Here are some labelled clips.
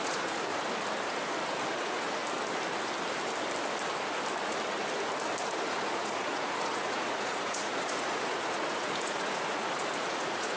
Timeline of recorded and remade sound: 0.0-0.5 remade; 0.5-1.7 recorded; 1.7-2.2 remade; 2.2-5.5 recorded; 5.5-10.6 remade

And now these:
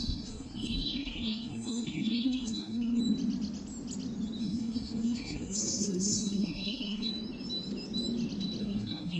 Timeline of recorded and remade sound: 0.0-3.0 remade; 3.0-4.4 recorded; 4.4-7.1 remade; 7.1-8.6 recorded; 8.6-9.2 remade

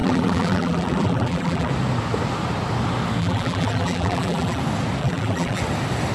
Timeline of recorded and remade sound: 0.0-1.7 remade; 1.7-3.2 recorded; 3.2-4.6 remade; 4.6-5.0 recorded; 5.0-5.6 remade; 5.6-6.1 recorded